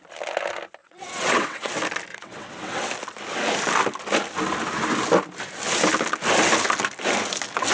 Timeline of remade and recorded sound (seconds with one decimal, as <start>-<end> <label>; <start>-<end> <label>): 0.0-0.8 recorded; 0.8-1.7 remade; 1.7-2.1 recorded; 2.1-2.9 remade; 2.9-7.7 recorded